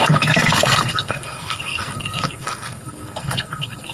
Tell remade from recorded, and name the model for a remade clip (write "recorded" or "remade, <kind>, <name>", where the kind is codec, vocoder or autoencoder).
remade, codec, SNAC